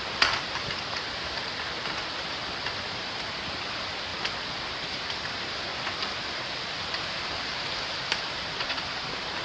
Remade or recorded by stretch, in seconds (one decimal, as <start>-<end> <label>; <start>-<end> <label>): 0.0-2.4 remade; 2.4-3.0 recorded; 3.0-4.1 remade; 4.1-4.7 recorded; 4.7-5.7 remade; 5.7-7.5 recorded; 7.5-9.4 remade